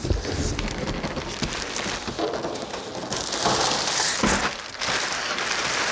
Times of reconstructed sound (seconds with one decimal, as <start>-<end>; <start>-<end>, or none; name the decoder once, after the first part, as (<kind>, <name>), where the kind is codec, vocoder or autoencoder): none